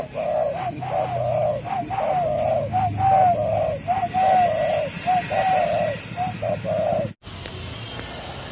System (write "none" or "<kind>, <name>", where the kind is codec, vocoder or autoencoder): none